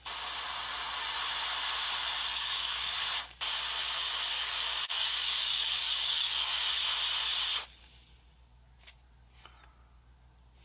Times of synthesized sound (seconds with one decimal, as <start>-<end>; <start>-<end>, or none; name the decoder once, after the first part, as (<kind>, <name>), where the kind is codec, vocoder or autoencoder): 2.3-2.9 (codec, DAC); 4.3-6.5